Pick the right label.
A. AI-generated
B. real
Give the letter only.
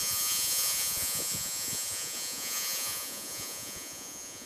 A